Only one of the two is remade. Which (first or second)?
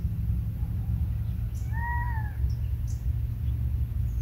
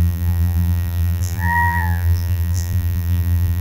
second